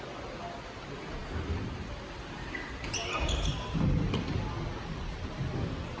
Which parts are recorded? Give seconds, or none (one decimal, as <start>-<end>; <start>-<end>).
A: 0.0-1.2; 3.8-6.0